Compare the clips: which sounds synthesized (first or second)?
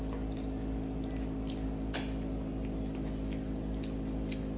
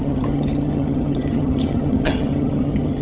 second